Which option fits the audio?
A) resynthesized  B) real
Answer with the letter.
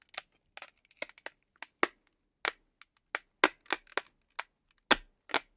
B